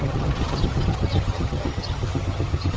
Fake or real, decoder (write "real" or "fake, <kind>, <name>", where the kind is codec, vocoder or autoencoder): fake, vocoder, HiFi-GAN